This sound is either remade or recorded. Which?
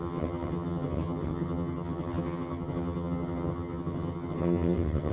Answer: remade